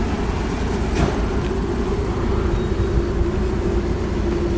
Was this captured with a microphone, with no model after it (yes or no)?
yes